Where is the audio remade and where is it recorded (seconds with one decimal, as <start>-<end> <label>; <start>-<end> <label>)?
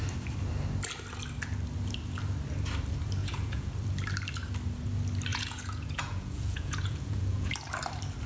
0.0-3.2 recorded; 3.2-3.7 remade; 3.7-5.3 recorded; 5.3-7.5 remade; 7.5-8.3 recorded